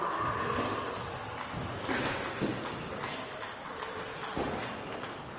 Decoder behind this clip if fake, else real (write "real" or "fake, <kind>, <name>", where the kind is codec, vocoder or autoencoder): real